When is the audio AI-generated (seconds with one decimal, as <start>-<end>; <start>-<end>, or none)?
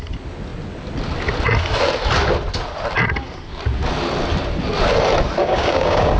5.4-6.2